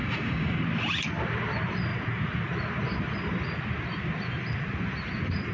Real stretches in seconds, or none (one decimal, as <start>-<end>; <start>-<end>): 0.6-5.5